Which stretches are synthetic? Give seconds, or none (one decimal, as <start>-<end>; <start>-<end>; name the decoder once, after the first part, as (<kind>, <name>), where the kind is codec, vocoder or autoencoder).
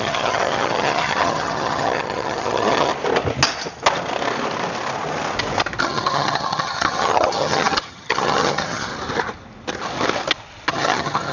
0.0-2.9 (vocoder, HiFi-GAN); 5.8-8.9; 10.7-11.3